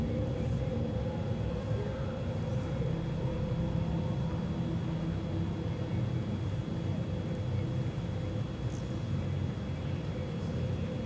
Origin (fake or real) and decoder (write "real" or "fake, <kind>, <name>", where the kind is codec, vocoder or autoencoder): real